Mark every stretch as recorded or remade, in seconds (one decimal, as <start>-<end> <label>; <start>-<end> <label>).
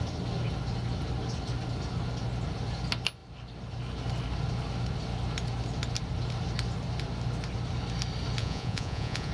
0.0-8.4 recorded; 8.4-9.3 remade